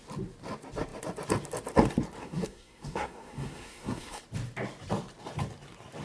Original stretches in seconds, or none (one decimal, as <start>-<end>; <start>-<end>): 0.0-2.2; 4.2-6.0

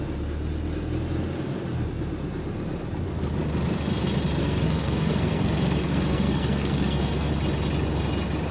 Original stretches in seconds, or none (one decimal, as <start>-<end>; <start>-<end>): 0.0-4.4; 7.3-8.5

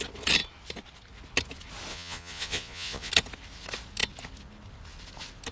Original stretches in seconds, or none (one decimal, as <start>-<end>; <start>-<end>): 0.0-1.9; 3.1-5.5